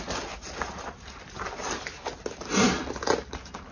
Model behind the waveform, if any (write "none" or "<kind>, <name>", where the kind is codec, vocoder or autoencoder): none